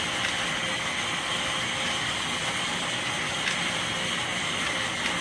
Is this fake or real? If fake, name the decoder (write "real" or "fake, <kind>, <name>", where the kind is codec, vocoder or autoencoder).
real